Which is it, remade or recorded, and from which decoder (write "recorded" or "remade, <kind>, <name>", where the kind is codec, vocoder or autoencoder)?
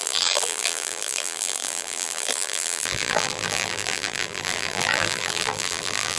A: remade, vocoder, BigVGAN v2